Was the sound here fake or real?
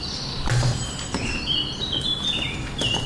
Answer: real